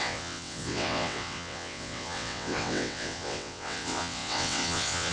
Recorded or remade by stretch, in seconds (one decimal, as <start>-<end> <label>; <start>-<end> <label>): 0.0-5.1 remade